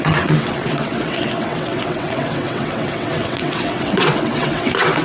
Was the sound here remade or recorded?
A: remade